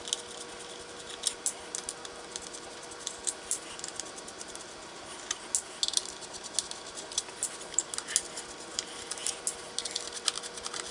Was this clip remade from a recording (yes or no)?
no